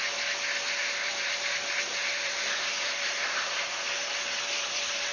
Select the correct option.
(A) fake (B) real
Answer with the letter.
A